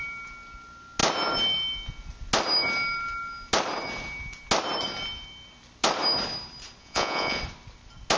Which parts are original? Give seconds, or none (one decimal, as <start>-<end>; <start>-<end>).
0.0-6.8; 7.4-8.2